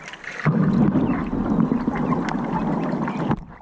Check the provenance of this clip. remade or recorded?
recorded